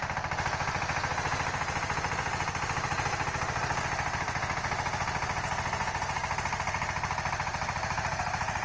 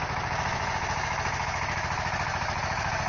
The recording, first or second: first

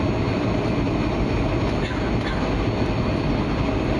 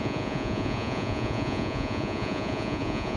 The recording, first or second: first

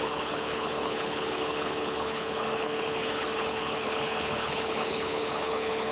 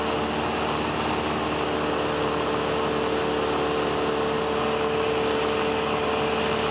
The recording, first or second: second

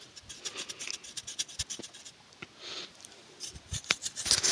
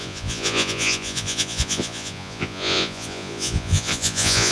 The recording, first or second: first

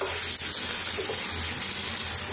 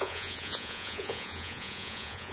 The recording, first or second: first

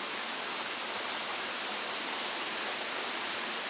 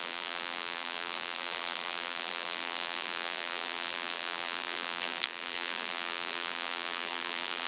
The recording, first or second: first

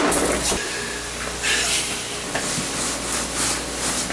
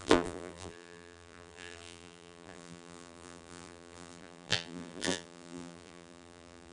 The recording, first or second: first